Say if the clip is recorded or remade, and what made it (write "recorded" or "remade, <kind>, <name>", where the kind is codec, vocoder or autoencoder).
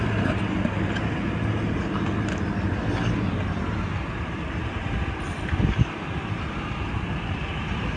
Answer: recorded